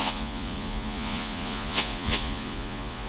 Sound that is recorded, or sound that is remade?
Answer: remade